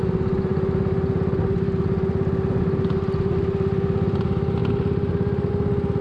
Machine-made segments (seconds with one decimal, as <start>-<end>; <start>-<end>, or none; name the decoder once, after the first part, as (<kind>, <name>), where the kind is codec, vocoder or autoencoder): none